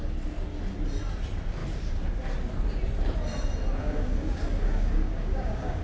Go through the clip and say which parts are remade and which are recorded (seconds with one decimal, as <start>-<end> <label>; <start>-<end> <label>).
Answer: 0.0-3.8 recorded; 3.8-5.8 remade